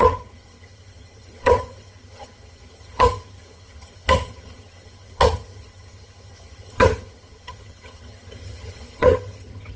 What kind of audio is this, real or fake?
fake